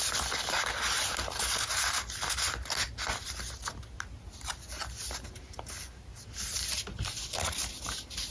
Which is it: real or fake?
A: real